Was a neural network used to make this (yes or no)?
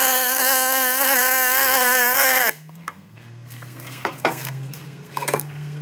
yes